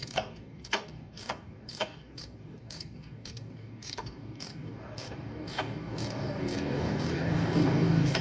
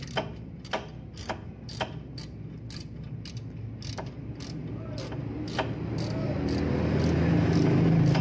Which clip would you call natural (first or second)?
second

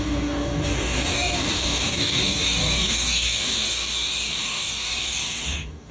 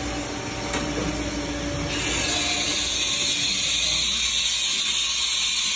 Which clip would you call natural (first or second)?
second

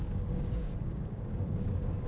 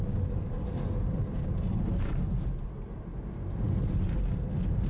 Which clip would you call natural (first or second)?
second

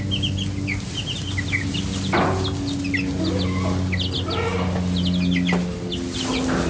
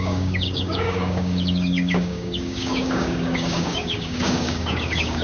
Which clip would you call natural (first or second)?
first